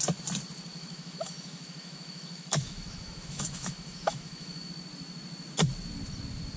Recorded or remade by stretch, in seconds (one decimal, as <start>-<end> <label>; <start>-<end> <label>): 0.0-0.7 recorded; 0.7-4.7 remade; 4.7-6.6 recorded